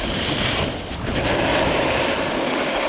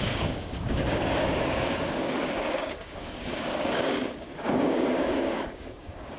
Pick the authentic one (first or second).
first